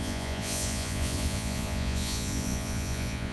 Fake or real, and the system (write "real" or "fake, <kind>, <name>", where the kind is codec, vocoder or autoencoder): fake, vocoder, Vocos